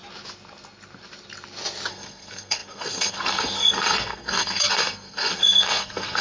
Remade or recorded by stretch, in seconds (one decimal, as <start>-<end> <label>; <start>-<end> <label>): 0.0-1.9 recorded; 1.9-6.2 remade